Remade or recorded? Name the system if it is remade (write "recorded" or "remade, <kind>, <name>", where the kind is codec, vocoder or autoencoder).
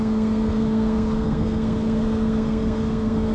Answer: remade, codec, SNAC